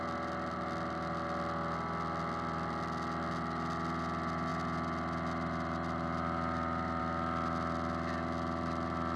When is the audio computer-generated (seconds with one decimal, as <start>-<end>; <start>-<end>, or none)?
none